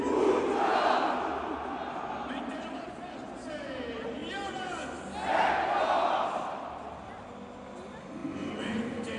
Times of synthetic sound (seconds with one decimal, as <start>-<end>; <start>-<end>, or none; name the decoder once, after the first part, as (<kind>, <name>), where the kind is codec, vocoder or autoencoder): 0.0-4.2 (vocoder, BigVGAN v2); 6.6-9.2